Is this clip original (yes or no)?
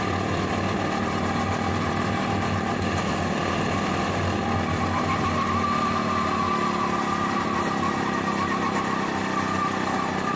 yes